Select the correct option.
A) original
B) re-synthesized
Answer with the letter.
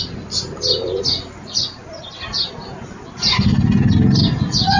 A